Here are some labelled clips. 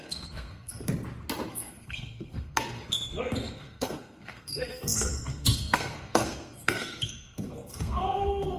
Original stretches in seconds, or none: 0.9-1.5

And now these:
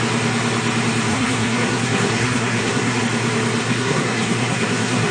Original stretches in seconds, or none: 0.0-1.1; 3.0-3.6

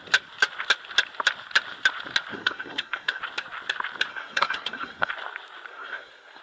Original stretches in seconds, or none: 0.0-2.3; 3.2-4.1; 5.1-5.7

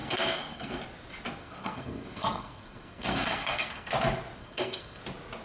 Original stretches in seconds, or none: 0.8-1.4; 3.9-4.4; 5.0-5.4